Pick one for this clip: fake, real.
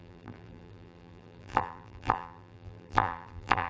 fake